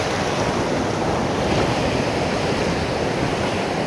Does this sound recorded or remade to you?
recorded